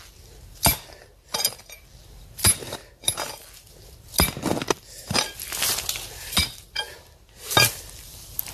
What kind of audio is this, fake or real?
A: real